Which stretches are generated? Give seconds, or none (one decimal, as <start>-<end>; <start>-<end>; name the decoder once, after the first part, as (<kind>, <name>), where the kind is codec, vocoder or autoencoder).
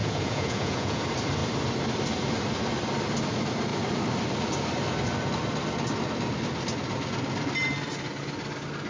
0.0-1.0 (vocoder, Vocos)